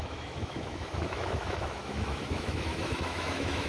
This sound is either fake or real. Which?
fake